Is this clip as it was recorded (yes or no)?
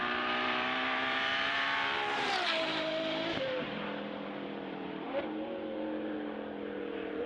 no